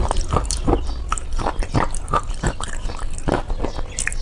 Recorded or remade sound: recorded